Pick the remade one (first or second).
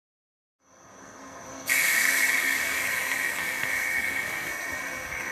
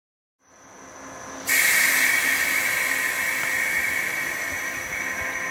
first